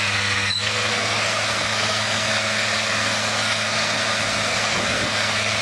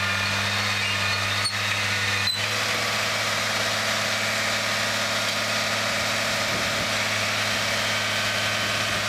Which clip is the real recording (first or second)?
second